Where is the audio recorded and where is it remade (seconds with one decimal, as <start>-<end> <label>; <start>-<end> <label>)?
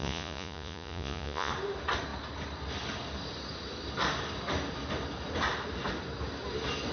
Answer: 0.0-1.5 remade; 1.5-6.9 recorded